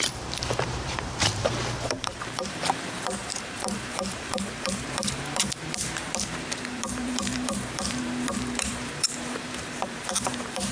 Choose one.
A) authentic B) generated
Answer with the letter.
B